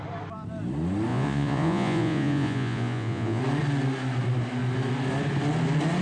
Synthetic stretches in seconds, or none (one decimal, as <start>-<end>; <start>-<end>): 1.1-3.4